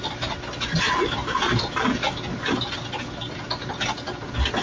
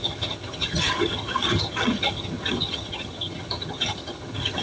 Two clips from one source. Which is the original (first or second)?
first